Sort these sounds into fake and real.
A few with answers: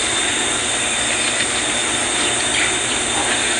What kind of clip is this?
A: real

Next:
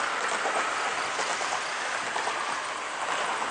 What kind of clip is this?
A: real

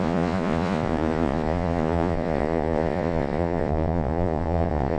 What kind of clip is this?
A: fake